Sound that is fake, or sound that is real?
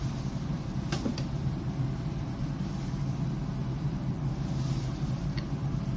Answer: real